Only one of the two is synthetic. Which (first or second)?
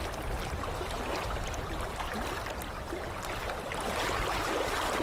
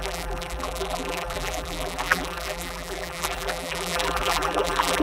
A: second